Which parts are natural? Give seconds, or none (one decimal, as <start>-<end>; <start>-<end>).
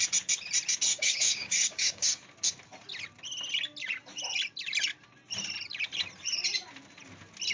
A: 0.0-0.9; 2.2-7.5